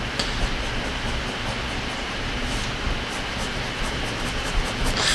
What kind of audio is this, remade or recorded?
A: recorded